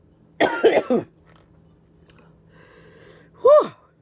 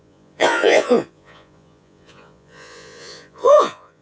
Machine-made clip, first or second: second